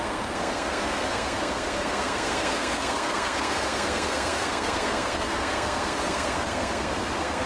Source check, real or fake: fake